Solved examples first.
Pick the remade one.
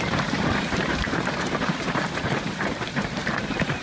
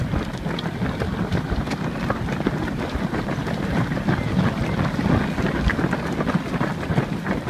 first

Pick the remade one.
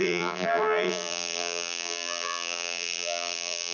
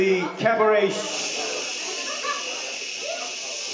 first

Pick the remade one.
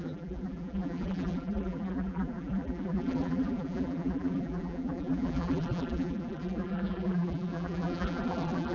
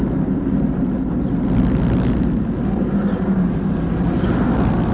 first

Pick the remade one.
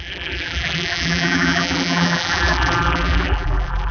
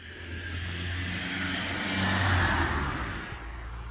first